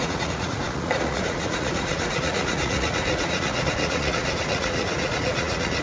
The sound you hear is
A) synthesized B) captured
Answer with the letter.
A